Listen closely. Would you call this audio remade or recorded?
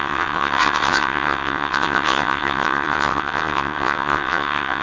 remade